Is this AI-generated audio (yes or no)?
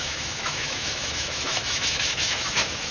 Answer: yes